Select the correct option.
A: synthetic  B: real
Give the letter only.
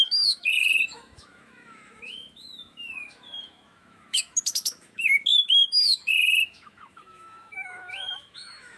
A